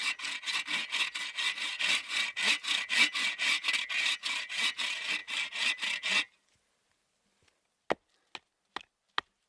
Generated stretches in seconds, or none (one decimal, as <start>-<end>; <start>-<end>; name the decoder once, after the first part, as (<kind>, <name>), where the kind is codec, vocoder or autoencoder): none